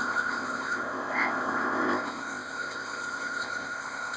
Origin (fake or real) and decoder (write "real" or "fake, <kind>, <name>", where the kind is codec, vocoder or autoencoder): fake, codec, ZipCodec